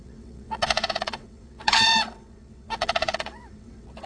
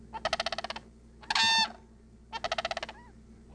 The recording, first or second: second